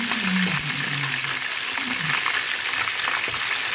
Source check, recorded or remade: recorded